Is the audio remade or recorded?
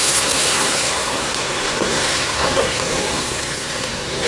remade